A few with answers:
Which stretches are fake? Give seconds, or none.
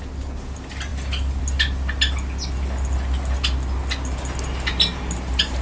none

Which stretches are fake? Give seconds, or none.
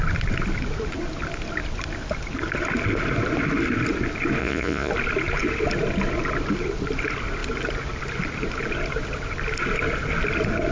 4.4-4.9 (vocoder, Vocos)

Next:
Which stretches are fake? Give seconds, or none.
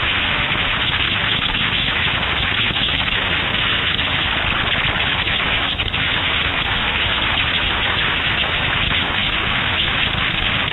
0.0-4.3 (autoencoder, DAC-VAE); 5.0-10.7